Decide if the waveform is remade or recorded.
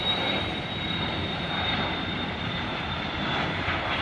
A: remade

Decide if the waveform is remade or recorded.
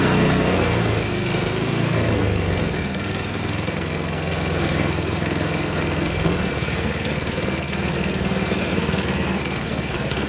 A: remade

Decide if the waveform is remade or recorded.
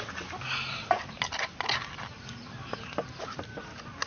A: recorded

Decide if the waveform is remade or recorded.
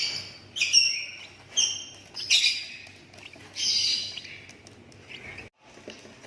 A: recorded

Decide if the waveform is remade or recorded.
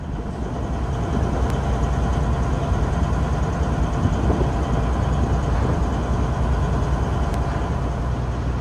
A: recorded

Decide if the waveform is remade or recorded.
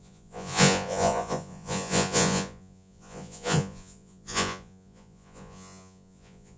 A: remade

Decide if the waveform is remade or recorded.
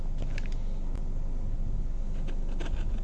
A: recorded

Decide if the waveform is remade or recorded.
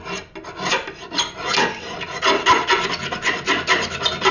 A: recorded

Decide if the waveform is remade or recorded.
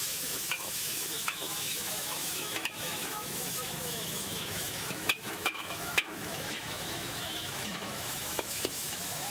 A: remade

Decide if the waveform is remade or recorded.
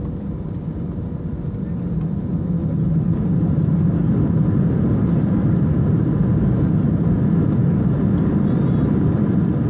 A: recorded